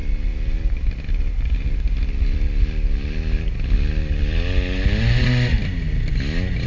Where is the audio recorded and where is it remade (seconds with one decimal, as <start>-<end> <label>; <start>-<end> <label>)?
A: 0.0-6.7 recorded